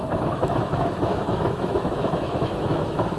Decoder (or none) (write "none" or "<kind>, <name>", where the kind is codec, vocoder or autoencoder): autoencoder, DAC-VAE